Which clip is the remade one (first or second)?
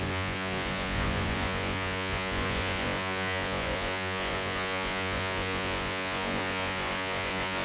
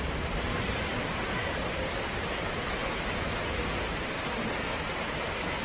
first